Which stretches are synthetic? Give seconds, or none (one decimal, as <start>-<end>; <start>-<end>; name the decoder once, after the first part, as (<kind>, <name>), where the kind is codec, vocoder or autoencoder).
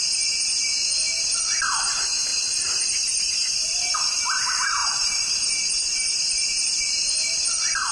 2.3-3.9 (vocoder, BigVGAN v2); 4.8-7.3